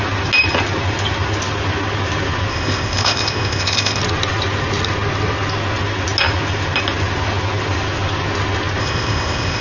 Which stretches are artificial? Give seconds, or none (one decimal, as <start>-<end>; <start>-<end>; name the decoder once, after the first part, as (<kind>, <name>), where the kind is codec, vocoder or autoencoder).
2.5-4.0 (codec, ZipCodec); 8.8-9.6